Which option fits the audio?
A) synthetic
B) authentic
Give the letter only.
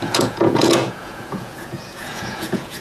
A